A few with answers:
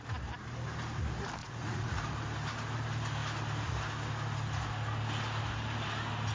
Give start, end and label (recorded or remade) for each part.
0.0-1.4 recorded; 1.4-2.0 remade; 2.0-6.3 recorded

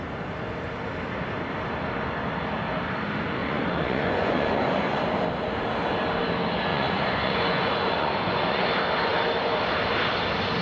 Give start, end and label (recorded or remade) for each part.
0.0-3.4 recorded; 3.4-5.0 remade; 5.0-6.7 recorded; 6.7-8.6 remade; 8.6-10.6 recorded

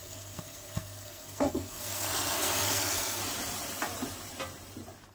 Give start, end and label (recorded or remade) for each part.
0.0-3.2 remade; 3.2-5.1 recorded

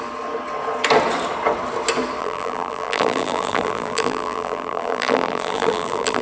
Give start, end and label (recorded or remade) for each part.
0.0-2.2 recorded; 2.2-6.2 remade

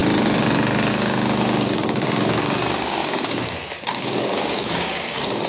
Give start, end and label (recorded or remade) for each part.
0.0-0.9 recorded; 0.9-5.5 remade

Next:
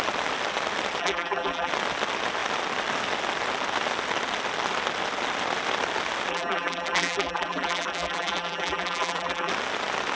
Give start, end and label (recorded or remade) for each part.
0.0-1.0 recorded; 1.0-1.7 remade; 1.7-6.3 recorded; 6.3-9.5 remade; 9.5-10.2 recorded

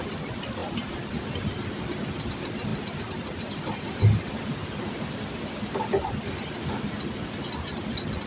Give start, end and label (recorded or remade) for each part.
0.0-8.3 recorded